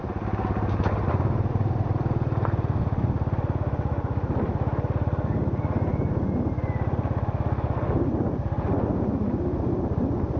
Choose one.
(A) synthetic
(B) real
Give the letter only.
B